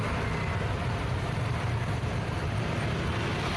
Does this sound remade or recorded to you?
recorded